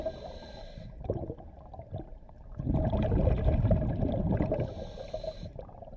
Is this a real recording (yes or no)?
no